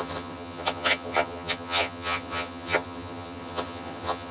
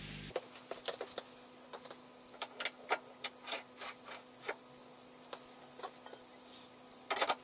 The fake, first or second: first